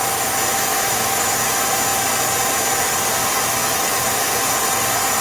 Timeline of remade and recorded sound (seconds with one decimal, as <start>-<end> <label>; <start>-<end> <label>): 0.0-0.7 recorded; 0.7-1.3 remade; 1.3-3.6 recorded; 3.6-4.5 remade; 4.5-5.2 recorded